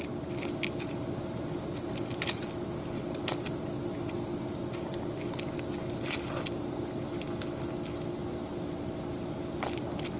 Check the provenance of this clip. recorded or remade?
recorded